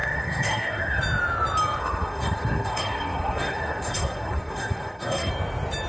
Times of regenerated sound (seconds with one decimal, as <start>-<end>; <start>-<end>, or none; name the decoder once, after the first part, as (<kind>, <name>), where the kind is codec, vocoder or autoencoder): 0.0-1.0 (codec, SNAC); 1.8-5.3